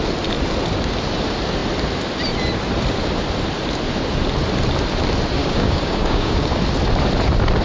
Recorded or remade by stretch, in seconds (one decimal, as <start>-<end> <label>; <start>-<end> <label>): 0.0-5.4 recorded; 5.4-6.6 remade; 6.6-7.6 recorded